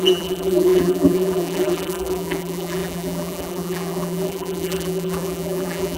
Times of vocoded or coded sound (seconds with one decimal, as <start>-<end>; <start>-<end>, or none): 0.0-6.0